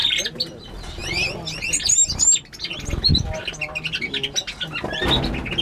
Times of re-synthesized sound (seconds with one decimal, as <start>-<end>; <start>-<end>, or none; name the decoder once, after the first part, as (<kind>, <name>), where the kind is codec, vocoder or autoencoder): none